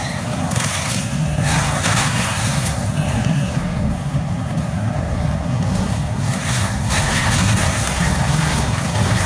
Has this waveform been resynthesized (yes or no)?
yes